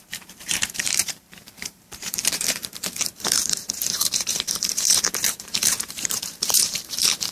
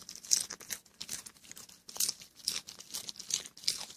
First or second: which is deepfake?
first